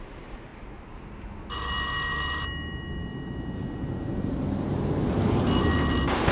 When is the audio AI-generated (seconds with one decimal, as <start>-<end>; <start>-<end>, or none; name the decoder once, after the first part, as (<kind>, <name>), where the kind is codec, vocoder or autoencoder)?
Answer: none